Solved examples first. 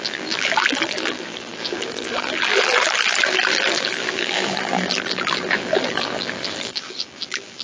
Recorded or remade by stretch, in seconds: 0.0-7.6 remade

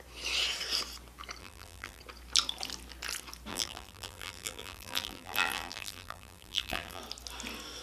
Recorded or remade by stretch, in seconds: 0.0-1.4 recorded; 1.4-2.0 remade; 2.0-3.5 recorded; 3.5-7.0 remade; 7.0-7.8 recorded

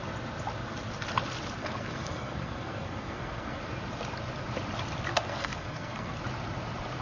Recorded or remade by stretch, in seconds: 0.0-1.6 recorded; 1.6-3.6 remade; 3.6-5.1 recorded; 5.1-6.2 remade; 6.2-7.0 recorded